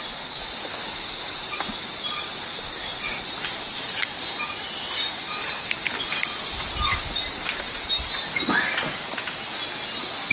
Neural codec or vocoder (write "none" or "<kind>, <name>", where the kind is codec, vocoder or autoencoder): none